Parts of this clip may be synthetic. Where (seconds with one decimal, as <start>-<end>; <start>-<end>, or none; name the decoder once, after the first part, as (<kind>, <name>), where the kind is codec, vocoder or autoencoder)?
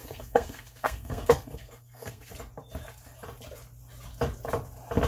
0.0-2.3 (codec, SNAC)